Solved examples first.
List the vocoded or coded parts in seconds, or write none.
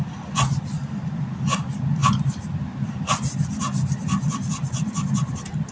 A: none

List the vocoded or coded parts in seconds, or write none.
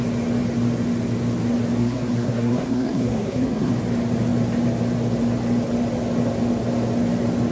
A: 1.8-3.7 (codec, SNAC)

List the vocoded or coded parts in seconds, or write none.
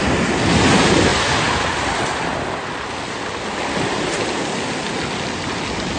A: none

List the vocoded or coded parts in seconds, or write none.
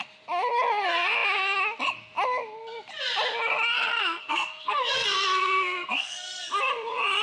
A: 4.0-6.4 (codec, SNAC)